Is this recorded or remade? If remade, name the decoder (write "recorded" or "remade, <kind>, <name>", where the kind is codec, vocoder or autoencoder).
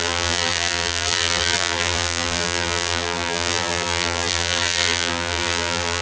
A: remade, vocoder, BigVGAN v2